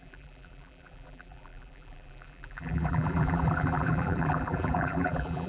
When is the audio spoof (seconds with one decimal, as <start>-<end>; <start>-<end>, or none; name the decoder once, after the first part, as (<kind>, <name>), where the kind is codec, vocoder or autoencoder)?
0.0-5.5 (vocoder, BigVGAN v2)